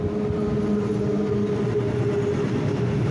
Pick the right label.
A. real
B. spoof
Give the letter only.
A